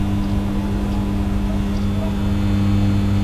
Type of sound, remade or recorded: recorded